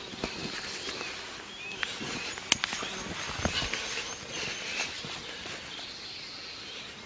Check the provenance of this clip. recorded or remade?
recorded